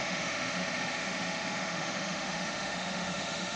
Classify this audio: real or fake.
fake